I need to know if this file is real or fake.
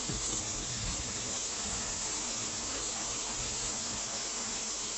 fake